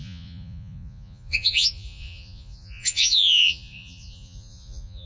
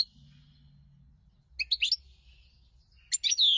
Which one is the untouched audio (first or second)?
second